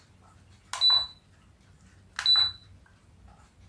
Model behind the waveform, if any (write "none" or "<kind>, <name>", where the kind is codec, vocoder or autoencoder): none